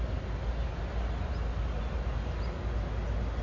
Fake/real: real